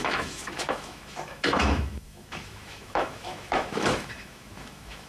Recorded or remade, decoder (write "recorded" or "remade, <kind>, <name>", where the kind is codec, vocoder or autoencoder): remade, autoencoder, DAC-VAE